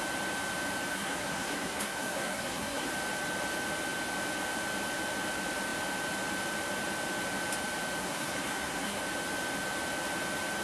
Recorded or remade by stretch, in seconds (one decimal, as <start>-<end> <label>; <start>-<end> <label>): 0.0-0.9 recorded; 0.9-2.9 remade; 2.9-8.0 recorded; 8.0-9.0 remade; 9.0-10.6 recorded